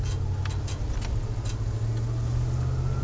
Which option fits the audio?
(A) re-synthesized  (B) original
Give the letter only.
B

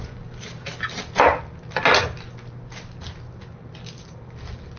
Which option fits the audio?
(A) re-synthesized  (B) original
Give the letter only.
B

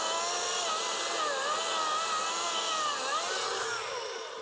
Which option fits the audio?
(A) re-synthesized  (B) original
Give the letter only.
B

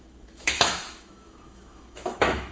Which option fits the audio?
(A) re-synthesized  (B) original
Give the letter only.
A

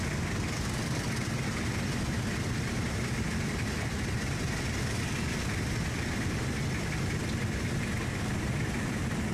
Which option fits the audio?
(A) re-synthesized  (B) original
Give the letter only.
B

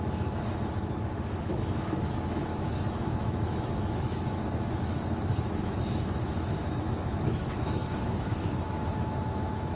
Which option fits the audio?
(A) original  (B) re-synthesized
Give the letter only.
B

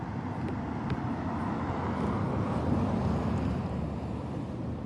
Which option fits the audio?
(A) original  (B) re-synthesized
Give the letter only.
A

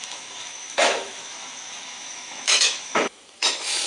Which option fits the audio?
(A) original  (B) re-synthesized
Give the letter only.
B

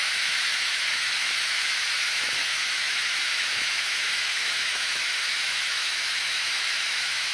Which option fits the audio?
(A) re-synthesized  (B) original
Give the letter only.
A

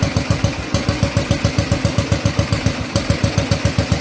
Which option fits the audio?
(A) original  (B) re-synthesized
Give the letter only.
A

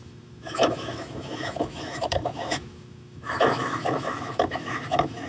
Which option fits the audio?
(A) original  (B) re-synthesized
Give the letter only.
B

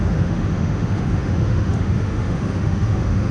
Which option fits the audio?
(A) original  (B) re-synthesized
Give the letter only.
B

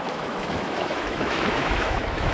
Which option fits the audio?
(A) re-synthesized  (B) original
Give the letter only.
A